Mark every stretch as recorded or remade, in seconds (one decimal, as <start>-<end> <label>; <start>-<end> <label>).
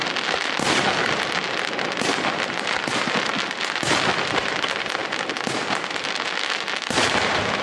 0.0-7.6 recorded